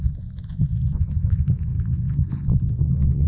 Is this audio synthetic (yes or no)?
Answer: yes